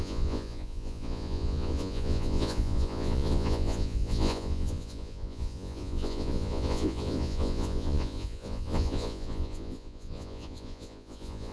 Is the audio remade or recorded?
remade